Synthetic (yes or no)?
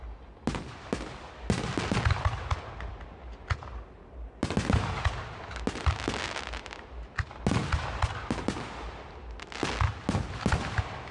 no